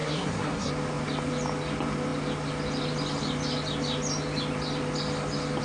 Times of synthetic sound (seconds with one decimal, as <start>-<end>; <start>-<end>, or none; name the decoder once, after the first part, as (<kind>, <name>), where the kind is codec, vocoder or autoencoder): 0.0-0.7 (codec, SNAC)